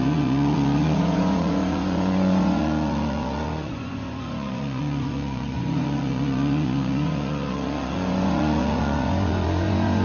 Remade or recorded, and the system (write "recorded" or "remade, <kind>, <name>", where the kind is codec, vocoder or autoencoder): remade, vocoder, Vocos